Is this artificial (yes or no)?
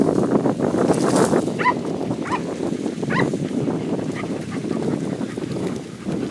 no